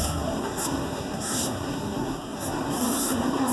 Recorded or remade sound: remade